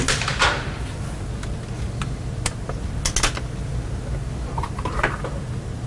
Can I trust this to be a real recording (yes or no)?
yes